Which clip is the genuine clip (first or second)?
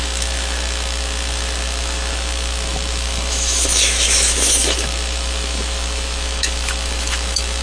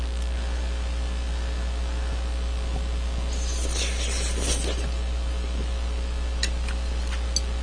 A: second